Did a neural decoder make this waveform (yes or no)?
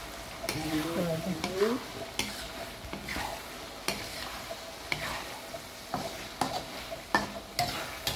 no